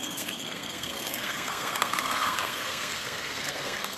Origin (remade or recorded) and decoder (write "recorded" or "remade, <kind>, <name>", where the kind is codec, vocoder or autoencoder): remade, codec, SNAC